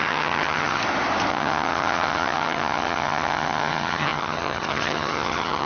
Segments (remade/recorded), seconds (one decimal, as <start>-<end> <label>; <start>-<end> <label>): 0.0-0.8 remade; 0.8-1.3 recorded; 1.3-5.7 remade